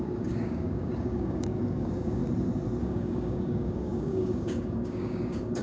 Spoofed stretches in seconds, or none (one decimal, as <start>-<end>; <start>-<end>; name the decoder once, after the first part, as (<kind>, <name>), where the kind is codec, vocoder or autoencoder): 0.0-2.2 (codec, DAC); 2.8-5.6